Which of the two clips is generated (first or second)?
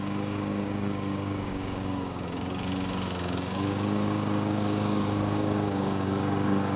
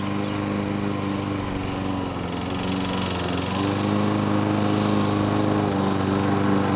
first